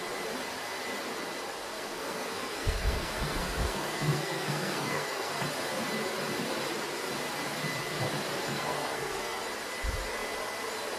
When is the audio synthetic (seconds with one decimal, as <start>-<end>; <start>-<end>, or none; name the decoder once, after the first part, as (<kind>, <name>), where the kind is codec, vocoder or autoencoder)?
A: 1.7-5.3 (codec, SNAC); 8.5-9.4